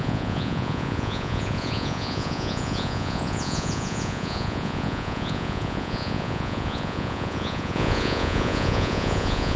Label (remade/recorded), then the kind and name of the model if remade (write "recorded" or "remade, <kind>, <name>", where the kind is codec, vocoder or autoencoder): remade, vocoder, Vocos